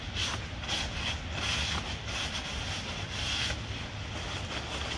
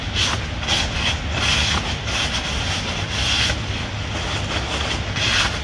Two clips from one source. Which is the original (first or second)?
second